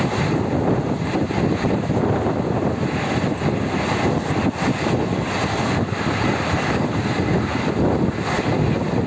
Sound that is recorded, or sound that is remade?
recorded